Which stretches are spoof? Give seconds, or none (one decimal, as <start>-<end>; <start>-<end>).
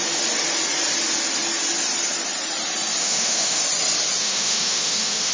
3.0-3.6; 4.2-5.3